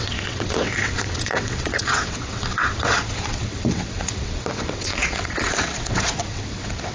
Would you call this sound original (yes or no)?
no